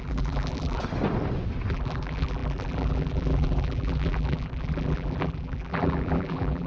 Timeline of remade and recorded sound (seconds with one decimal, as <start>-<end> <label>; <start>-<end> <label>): 0.0-0.8 remade; 0.8-1.7 recorded; 1.7-6.7 remade